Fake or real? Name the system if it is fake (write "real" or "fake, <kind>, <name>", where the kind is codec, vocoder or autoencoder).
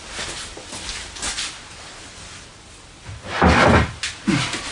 real